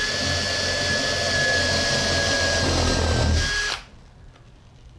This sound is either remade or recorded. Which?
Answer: recorded